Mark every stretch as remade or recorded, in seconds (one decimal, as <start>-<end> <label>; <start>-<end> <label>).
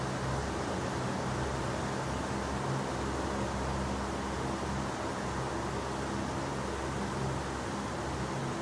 0.0-0.4 recorded; 0.4-1.7 remade; 1.7-8.6 recorded